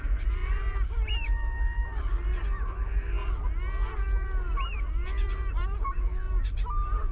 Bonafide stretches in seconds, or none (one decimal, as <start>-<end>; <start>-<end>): 0.0-7.1